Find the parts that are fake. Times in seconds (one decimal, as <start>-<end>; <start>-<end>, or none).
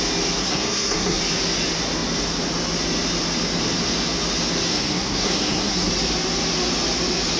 0.4-1.2; 4.7-5.9